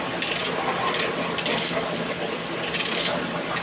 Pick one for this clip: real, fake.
real